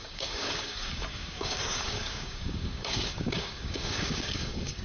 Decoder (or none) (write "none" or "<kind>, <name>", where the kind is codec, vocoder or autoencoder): codec, DAC